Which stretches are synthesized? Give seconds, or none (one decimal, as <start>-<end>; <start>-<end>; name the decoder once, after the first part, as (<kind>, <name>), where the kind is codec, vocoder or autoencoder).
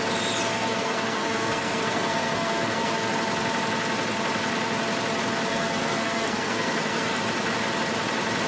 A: 0.5-3.1 (codec, SNAC); 5.5-7.2